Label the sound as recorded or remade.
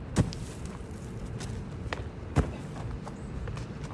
recorded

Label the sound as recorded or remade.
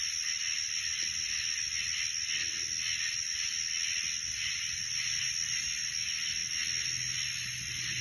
recorded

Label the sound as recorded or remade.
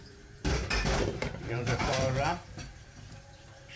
remade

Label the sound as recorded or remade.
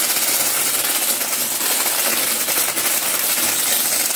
recorded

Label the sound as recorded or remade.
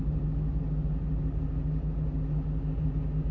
recorded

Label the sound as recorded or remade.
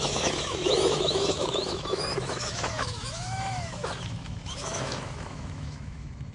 remade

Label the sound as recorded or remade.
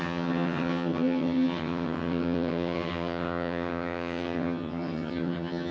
remade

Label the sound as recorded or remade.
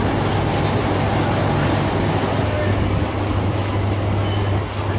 recorded